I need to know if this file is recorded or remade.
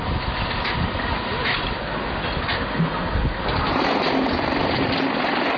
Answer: recorded